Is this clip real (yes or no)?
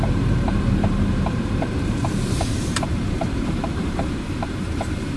no